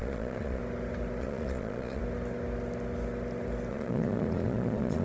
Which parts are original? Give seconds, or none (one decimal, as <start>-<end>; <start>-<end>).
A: 0.6-1.2; 2.0-3.7